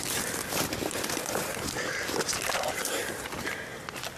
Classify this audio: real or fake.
fake